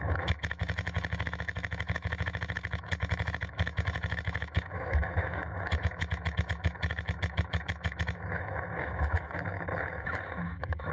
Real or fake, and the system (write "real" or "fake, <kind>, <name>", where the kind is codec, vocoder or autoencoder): fake, autoencoder, DAC-VAE